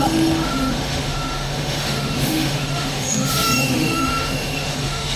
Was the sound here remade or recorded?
remade